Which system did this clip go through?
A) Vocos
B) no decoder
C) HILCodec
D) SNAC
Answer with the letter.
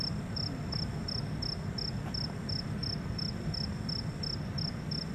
B